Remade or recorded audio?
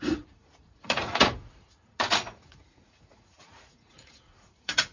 remade